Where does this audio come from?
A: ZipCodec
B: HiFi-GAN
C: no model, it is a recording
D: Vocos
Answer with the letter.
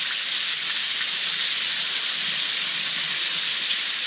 C